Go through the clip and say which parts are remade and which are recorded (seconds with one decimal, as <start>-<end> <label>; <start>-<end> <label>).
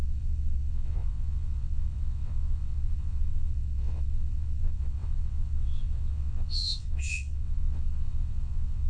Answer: 0.0-8.9 remade